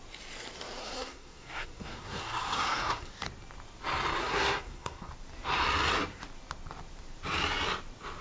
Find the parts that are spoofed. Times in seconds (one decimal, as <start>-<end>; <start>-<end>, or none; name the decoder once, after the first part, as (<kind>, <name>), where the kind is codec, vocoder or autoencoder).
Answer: 0.8-3.1 (codec, SNAC); 4.2-5.1